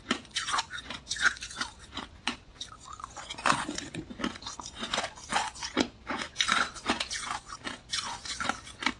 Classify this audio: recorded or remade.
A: remade